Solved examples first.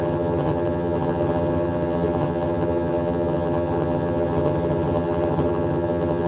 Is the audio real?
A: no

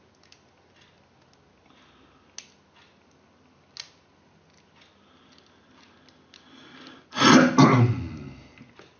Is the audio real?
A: yes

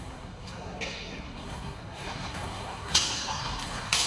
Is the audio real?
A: no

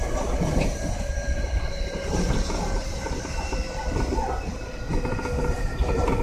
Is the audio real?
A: no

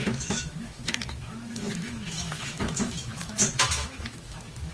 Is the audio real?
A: no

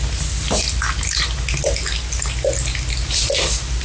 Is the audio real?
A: yes